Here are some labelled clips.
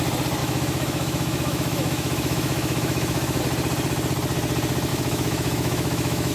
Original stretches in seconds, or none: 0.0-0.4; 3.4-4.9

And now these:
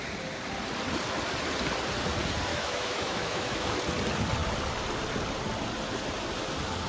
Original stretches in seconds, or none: 0.0-2.5; 3.8-6.9

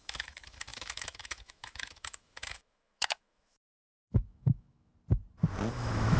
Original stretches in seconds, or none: 4.9-5.7

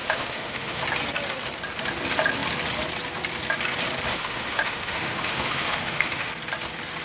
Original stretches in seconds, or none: 0.8-4.1; 6.3-7.0

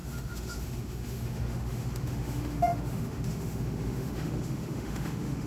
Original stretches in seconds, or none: none